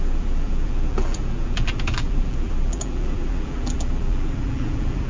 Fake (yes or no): yes